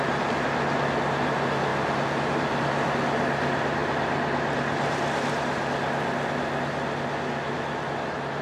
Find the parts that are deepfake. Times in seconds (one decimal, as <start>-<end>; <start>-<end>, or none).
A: none